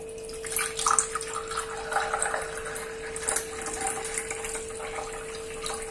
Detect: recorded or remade recorded